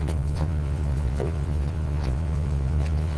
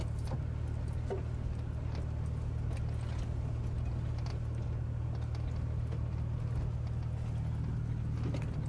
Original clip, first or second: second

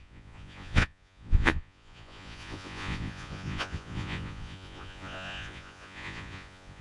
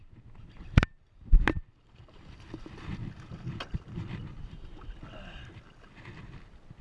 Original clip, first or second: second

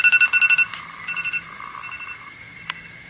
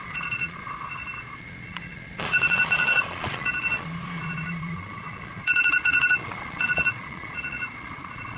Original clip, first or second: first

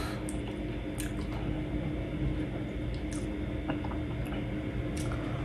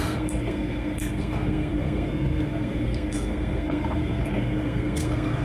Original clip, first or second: first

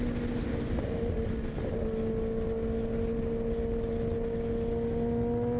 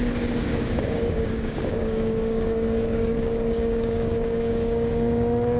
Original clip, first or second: first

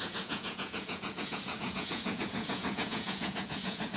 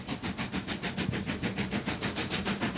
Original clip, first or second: second